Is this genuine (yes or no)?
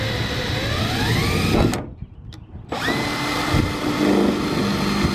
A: yes